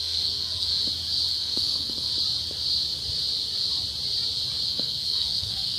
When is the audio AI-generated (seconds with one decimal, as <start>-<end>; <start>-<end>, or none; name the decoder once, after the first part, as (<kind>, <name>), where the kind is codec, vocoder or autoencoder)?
0.0-0.7 (codec, SNAC); 1.3-2.1; 4.7-5.8